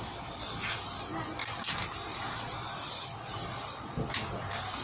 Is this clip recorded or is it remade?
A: recorded